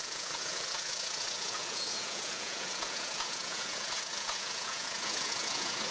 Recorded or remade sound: remade